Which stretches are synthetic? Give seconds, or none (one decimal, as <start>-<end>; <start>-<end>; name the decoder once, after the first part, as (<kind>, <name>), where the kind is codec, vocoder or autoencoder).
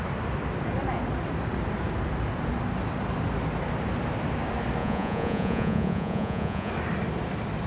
4.8-6.7 (vocoder, Vocos)